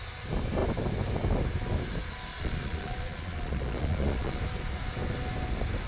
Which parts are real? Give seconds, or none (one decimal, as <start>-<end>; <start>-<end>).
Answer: 0.0-2.3; 4.4-5.9